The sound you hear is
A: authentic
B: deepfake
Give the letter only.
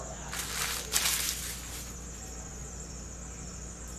A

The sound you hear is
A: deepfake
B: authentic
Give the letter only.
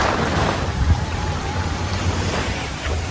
A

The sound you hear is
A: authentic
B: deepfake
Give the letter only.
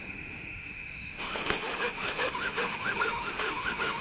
B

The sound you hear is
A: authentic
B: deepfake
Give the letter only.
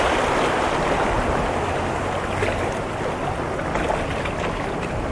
A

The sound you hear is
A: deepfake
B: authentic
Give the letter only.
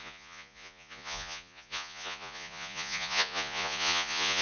A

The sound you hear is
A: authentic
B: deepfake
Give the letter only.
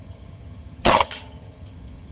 B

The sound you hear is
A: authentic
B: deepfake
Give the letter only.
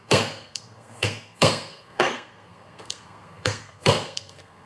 B